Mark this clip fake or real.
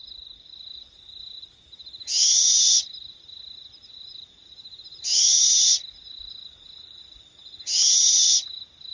real